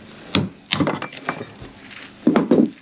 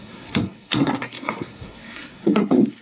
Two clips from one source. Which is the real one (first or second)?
first